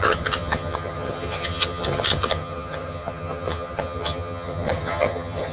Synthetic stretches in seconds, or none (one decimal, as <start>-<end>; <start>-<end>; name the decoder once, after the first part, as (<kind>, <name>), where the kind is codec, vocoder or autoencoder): 0.0-5.5 (vocoder, HiFi-GAN)